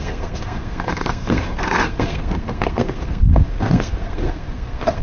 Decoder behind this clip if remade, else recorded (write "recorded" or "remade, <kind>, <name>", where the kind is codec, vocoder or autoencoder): remade, codec, SNAC